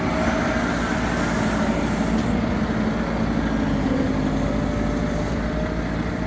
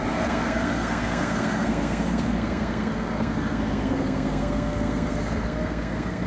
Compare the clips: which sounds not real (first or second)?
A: second